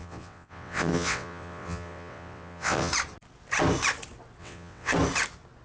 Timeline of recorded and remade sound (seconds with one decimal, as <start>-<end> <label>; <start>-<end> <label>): 0.0-2.9 remade; 2.9-4.4 recorded; 4.4-4.9 remade; 4.9-5.6 recorded